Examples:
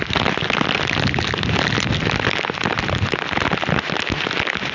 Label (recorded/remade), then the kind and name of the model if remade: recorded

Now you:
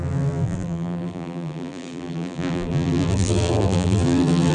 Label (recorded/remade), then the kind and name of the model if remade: remade, vocoder, BigVGAN v2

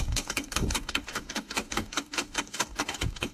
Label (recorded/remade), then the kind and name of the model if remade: remade, codec, DAC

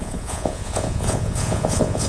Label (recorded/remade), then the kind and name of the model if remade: remade, vocoder, Vocos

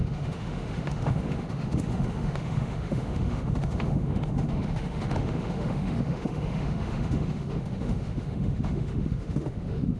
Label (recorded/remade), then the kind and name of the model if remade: remade, autoencoder, DAC-VAE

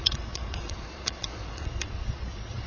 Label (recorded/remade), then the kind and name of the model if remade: remade, vocoder, Vocos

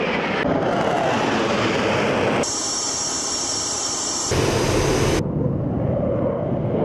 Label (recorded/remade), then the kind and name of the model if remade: recorded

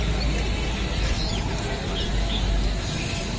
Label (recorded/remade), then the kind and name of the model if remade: recorded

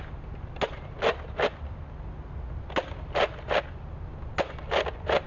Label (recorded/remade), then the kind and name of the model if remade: recorded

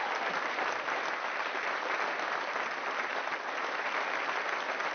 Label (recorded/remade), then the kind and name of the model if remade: recorded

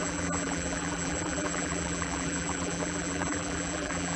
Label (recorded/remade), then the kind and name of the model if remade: remade, vocoder, BigVGAN v2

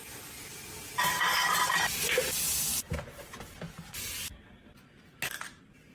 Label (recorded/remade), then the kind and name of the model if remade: recorded